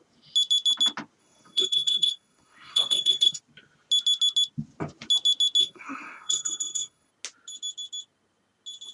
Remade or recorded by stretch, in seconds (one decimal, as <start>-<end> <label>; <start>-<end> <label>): 0.0-1.2 recorded; 1.2-3.4 remade; 3.4-5.6 recorded; 5.6-7.1 remade; 7.1-8.9 recorded